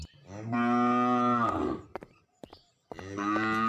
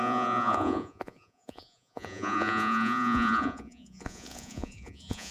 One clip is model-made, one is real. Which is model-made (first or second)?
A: second